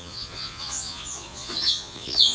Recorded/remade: remade